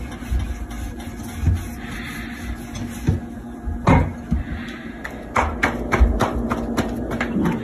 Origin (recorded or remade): recorded